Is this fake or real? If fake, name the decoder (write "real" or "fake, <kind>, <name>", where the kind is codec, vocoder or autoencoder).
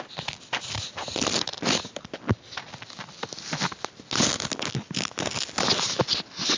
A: real